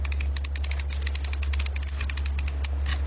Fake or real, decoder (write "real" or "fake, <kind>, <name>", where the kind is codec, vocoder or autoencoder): real